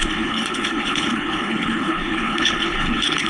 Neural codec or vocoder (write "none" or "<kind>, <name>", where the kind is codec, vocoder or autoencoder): codec, HILCodec